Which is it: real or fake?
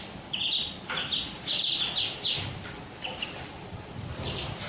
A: fake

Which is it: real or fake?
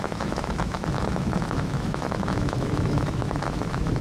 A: fake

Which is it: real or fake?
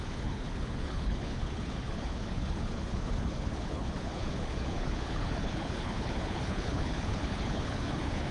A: fake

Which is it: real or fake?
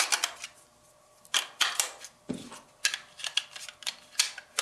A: real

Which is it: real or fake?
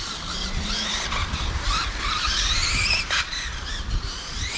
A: fake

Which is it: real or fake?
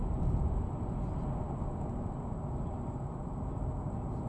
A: real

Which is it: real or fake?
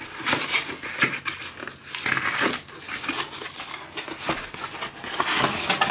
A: real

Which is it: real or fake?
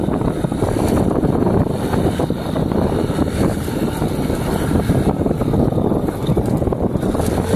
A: real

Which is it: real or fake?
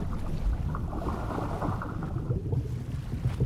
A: real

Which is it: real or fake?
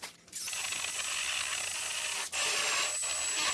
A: real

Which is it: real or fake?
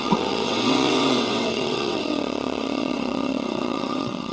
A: fake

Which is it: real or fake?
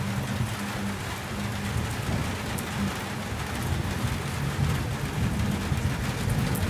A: real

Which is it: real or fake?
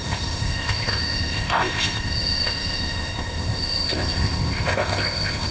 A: fake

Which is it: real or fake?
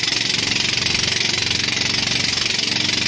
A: real